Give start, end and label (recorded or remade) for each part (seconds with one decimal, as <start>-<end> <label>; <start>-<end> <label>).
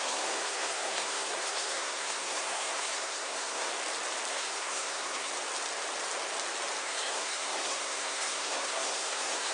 0.0-3.7 remade; 3.7-4.3 recorded; 4.3-5.3 remade; 5.3-6.8 recorded; 6.8-9.5 remade